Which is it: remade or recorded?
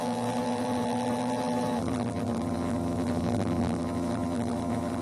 remade